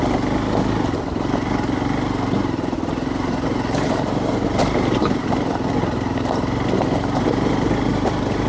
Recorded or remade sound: recorded